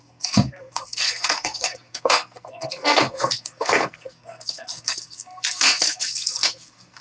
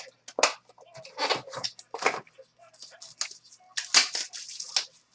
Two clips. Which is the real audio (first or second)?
second